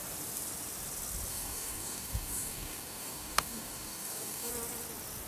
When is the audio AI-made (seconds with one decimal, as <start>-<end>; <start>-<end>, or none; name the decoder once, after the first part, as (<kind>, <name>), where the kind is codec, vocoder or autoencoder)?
1.3-4.5 (codec, DAC)